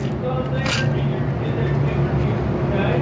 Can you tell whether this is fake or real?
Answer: real